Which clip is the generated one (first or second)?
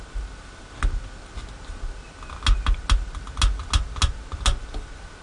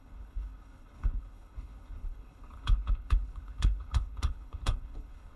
second